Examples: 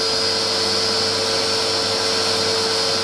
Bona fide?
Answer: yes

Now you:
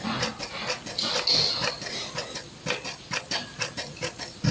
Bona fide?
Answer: yes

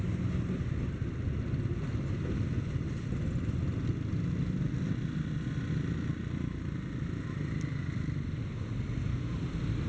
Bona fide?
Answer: yes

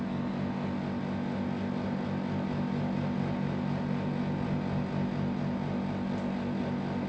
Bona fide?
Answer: yes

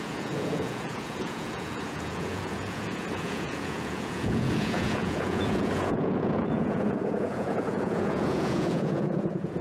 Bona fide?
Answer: no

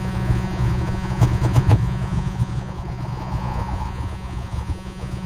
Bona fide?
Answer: no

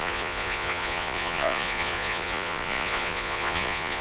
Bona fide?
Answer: no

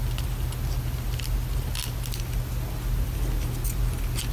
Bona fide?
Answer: yes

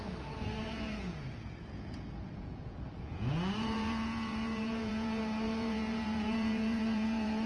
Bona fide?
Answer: no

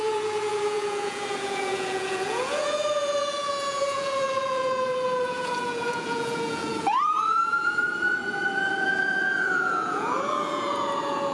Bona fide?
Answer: no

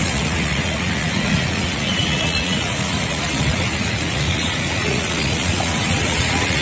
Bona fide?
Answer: no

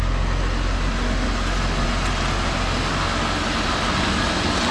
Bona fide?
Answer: yes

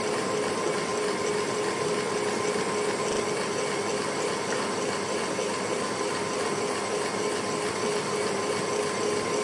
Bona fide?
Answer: yes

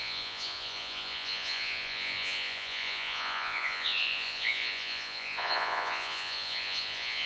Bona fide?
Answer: no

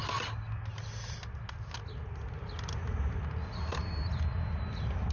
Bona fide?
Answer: yes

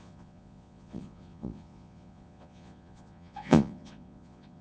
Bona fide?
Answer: no